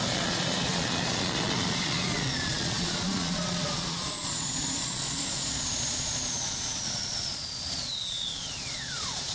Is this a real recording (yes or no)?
no